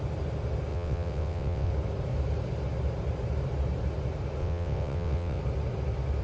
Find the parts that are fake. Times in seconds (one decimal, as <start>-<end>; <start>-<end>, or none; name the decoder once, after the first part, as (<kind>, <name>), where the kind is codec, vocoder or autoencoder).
0.7-1.7 (vocoder, WaveNeXt); 4.4-5.4